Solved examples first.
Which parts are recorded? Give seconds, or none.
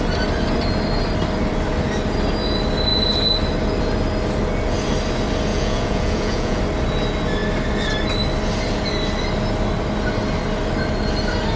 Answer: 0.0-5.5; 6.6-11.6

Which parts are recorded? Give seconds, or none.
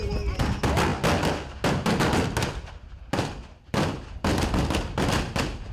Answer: 0.0-5.7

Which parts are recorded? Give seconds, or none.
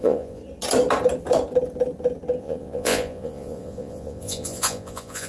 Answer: 0.4-2.4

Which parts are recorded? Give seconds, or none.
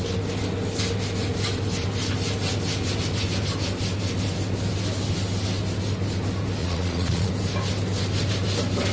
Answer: 0.0-6.6; 7.3-8.9